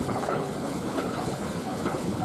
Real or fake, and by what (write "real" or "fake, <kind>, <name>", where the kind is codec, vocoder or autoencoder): fake, codec, HILCodec